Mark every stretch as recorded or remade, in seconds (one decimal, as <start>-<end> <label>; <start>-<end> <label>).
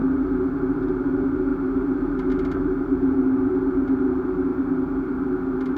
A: 0.0-5.8 recorded